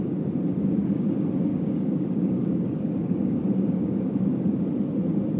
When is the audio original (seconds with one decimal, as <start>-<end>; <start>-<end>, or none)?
0.0-0.5; 1.1-1.5; 4.7-5.4